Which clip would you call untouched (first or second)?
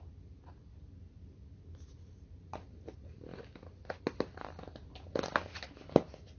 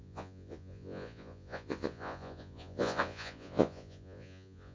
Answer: first